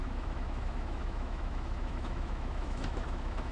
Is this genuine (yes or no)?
no